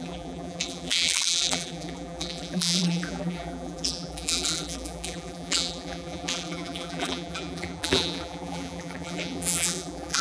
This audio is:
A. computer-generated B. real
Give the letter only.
A